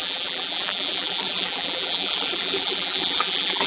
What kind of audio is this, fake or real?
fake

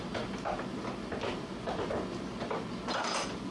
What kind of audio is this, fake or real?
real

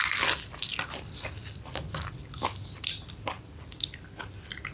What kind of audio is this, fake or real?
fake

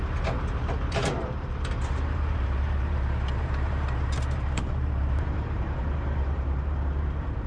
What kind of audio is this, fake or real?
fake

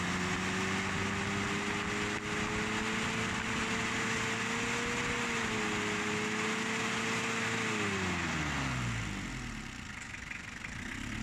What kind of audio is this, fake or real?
real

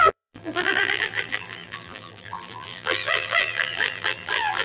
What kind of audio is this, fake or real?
fake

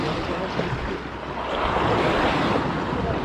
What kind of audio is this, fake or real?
real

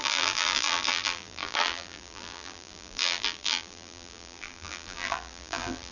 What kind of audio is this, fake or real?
fake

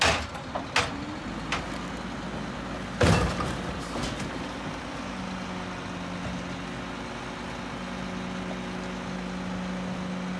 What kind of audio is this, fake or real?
real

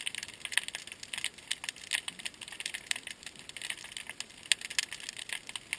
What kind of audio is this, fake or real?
real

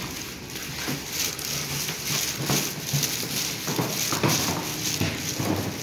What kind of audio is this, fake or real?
real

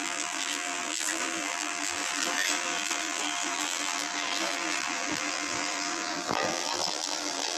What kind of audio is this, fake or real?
fake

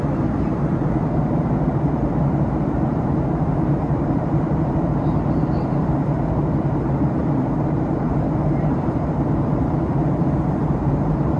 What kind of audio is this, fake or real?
fake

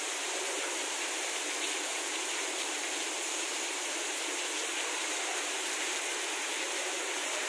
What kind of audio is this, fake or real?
fake